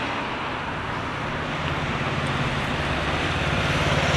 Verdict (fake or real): real